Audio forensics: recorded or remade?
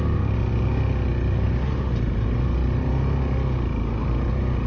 recorded